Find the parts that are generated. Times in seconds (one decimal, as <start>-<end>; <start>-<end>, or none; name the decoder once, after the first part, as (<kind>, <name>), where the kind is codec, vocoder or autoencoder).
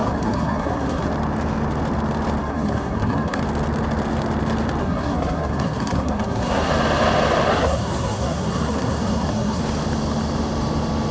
0.0-1.1 (codec, SNAC); 2.4-3.4; 4.8-6.7; 7.5-9.6